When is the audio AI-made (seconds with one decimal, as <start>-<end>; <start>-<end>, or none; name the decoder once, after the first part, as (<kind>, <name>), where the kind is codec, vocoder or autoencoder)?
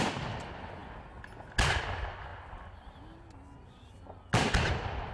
none